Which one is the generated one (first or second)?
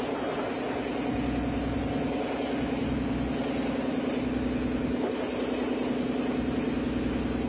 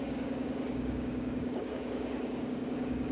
second